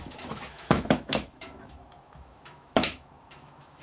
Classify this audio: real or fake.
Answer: fake